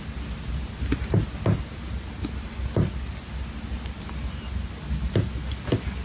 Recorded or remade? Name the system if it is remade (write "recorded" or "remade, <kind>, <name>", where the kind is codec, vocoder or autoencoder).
recorded